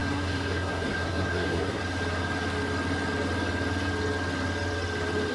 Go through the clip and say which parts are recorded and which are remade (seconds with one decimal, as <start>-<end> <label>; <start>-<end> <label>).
0.0-1.8 remade; 1.8-5.3 recorded